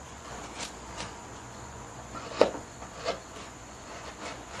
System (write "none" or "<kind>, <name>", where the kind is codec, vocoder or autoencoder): vocoder, Vocos